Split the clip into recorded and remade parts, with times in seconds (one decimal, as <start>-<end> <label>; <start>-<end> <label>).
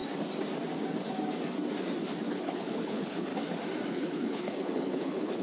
0.0-2.3 recorded; 2.3-3.3 remade; 3.3-3.9 recorded; 3.9-5.4 remade